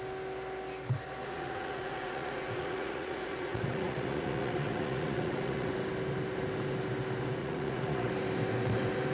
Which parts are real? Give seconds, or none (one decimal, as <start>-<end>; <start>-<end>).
0.0-1.2; 5.7-7.4; 8.1-9.1